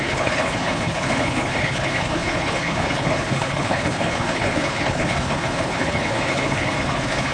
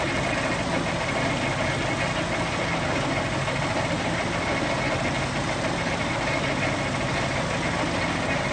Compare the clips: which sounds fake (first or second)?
first